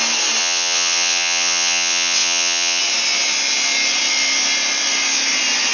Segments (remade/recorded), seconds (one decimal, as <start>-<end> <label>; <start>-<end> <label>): 0.0-0.4 recorded; 0.4-2.8 remade; 2.8-5.7 recorded